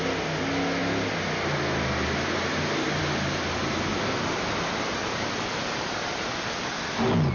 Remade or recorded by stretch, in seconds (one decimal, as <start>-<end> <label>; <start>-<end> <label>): 0.0-7.3 recorded